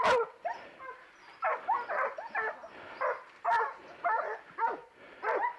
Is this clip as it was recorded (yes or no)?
yes